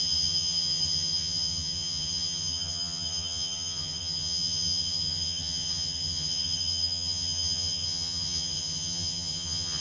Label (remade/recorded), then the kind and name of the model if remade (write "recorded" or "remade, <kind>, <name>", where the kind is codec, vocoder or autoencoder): remade, vocoder, HiFi-GAN